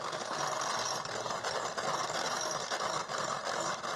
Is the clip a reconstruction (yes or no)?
no